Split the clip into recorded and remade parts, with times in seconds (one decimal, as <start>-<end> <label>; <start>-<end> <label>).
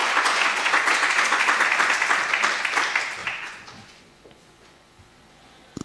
0.0-1.4 remade; 1.4-3.2 recorded; 3.2-5.8 remade